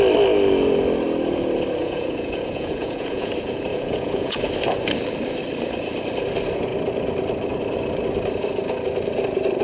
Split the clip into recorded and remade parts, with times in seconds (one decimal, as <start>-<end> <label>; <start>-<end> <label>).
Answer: 0.0-1.8 recorded; 1.8-3.3 remade; 3.3-3.7 recorded; 3.7-4.4 remade; 4.4-9.6 recorded